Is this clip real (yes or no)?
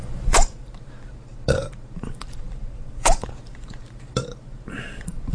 no